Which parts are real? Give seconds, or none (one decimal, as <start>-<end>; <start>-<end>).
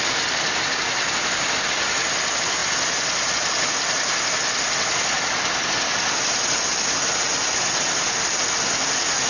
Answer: 0.0-9.3